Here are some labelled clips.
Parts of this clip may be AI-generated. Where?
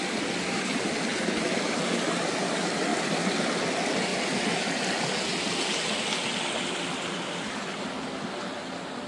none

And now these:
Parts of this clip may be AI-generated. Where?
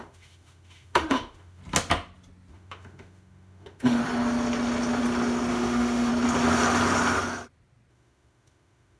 0.0-1.6; 2.5-4.0; 5.5-6.1; 7.9-9.0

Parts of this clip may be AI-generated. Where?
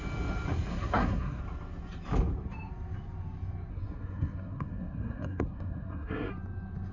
0.7-1.4; 3.7-6.3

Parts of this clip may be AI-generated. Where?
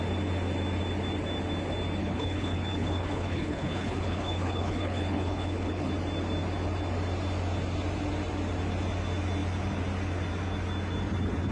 2.0-5.9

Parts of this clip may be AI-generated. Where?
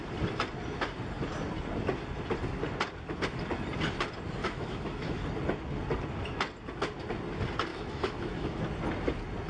4.4-5.2; 7.7-8.6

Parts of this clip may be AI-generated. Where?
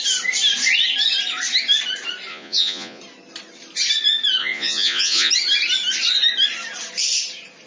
2.3-3.0; 4.4-5.3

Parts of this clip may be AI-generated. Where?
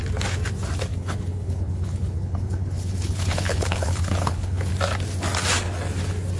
0.9-4.7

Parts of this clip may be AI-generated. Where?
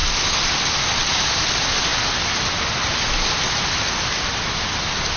none